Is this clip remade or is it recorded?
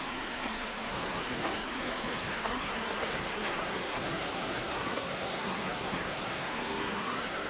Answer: remade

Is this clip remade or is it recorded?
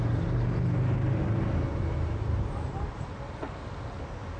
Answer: recorded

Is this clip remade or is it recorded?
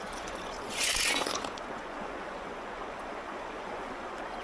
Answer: remade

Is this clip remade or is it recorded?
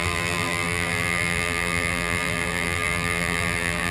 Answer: remade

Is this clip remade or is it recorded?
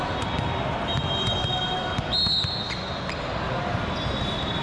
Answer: recorded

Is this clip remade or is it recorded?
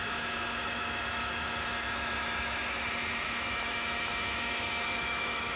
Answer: remade